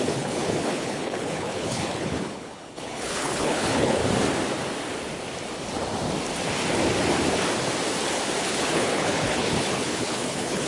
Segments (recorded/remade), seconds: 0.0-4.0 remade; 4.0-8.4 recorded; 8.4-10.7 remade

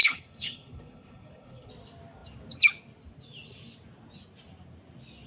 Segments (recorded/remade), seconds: 0.0-1.7 remade; 1.7-5.3 recorded

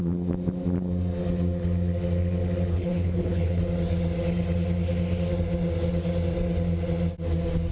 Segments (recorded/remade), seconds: 0.0-2.7 recorded; 2.7-3.6 remade; 3.6-7.7 recorded

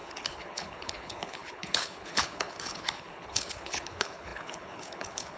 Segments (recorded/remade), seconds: 0.0-5.4 remade

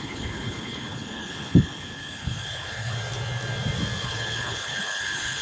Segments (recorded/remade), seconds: 0.0-3.0 remade; 3.0-4.0 recorded; 4.0-5.4 remade